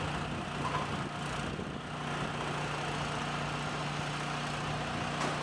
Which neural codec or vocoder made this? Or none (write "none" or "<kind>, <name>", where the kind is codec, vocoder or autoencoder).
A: none